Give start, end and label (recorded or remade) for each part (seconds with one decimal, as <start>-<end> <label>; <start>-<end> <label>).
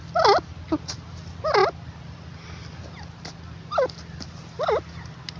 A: 0.0-5.4 recorded